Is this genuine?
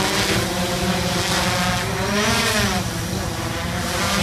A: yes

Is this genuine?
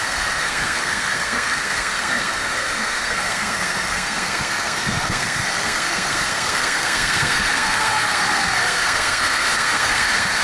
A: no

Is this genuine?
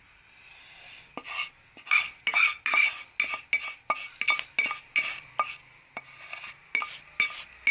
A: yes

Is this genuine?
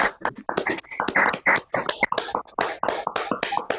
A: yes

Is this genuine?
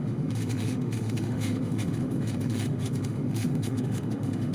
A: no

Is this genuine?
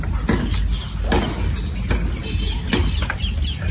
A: yes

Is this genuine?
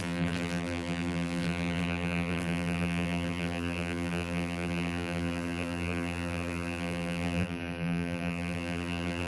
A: no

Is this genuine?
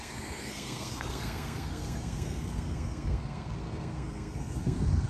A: no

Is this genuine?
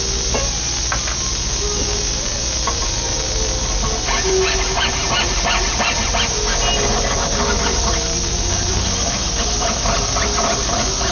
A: yes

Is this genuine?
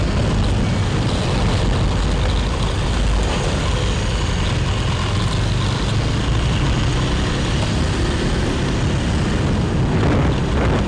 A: yes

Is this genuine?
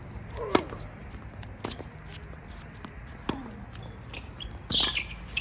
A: yes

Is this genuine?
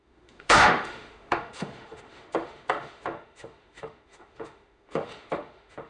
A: no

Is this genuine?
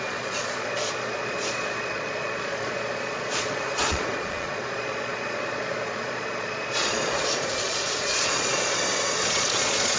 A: no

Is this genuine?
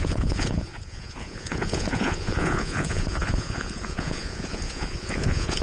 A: no